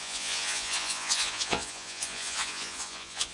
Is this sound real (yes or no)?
no